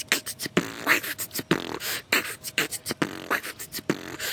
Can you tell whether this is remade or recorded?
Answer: recorded